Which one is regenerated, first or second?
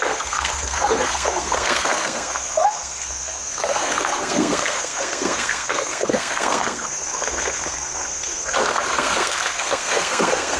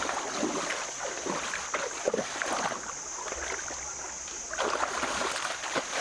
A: first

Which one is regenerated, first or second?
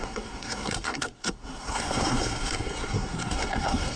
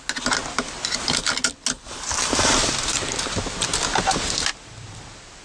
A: first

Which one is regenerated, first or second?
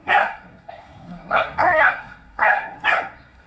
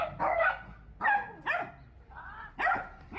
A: first